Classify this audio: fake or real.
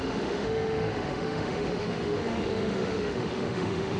fake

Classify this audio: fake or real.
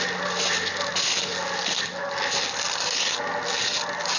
real